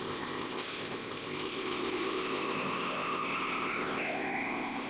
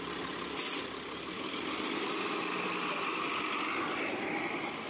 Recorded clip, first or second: second